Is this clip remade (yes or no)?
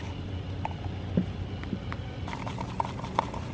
no